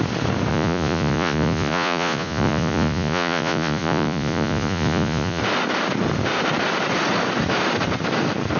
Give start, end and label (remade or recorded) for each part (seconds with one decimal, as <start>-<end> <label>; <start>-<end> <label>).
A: 0.0-0.5 recorded; 0.5-5.4 remade; 5.4-8.6 recorded